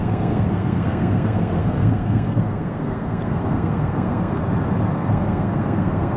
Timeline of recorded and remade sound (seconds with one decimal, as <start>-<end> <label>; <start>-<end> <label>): 0.0-4.4 remade; 4.4-4.9 recorded; 4.9-6.2 remade